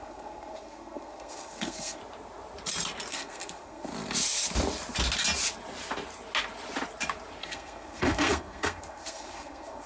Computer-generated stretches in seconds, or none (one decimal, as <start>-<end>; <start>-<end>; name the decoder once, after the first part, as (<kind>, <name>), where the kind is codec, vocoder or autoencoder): 0.0-2.0 (codec, SNAC); 3.1-3.9; 7.4-9.9

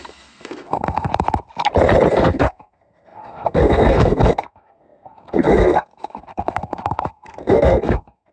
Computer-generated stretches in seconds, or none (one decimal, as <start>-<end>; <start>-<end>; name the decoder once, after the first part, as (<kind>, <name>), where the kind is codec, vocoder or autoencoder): 0.0-1.1 (codec, SNAC); 2.1-8.3

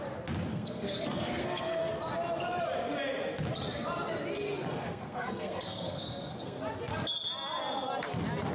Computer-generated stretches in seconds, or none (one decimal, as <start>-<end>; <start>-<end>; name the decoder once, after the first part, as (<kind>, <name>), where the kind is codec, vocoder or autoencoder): 0.5-1.9 (codec, SNAC); 4.7-6.6